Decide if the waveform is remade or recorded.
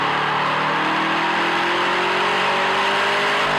recorded